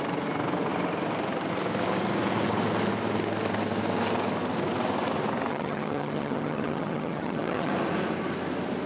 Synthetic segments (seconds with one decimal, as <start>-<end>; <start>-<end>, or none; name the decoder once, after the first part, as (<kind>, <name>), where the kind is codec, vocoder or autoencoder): 5.5-7.7 (vocoder, HiFi-GAN)